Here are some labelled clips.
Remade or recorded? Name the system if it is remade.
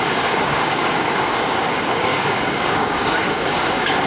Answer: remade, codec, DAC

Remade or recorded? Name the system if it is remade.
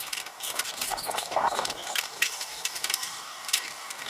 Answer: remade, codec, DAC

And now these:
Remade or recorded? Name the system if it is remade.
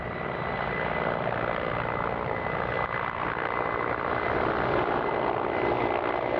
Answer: recorded